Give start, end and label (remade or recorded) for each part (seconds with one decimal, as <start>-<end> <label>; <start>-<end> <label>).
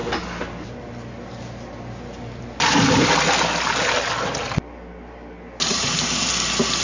0.0-6.8 recorded